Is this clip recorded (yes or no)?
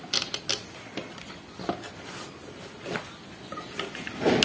yes